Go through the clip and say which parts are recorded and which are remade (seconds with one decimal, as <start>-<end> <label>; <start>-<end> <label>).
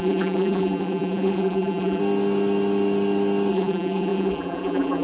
0.0-2.0 remade; 2.0-3.5 recorded; 3.5-5.0 remade